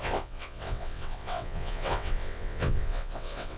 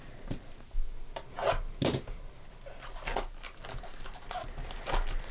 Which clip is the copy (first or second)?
first